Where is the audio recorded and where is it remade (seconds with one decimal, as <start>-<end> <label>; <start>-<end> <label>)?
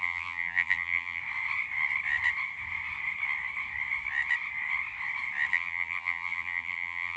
0.0-1.2 remade; 1.2-5.5 recorded; 5.5-7.2 remade